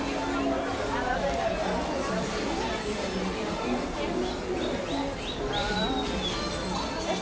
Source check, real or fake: real